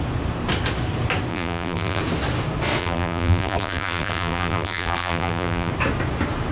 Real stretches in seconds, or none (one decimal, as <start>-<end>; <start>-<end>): 0.0-1.3; 2.0-2.8; 5.7-6.5